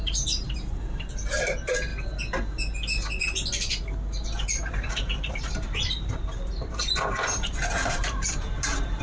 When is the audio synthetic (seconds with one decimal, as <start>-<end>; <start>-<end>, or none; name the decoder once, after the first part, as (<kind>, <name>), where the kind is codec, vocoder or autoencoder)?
0.0-1.9 (vocoder, BigVGAN v2); 4.7-9.0